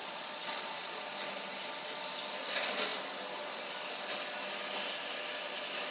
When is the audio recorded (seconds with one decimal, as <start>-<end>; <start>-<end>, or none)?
1.0-5.9